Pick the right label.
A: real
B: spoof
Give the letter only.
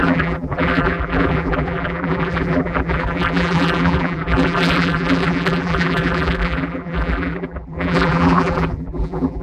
B